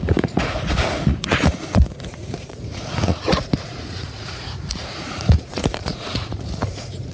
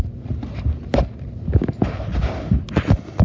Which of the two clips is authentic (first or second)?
second